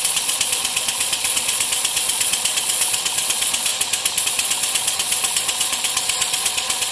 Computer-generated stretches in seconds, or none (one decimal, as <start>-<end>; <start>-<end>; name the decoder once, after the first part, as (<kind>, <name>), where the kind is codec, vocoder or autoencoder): 0.0-3.7 (vocoder, Vocos); 4.2-6.9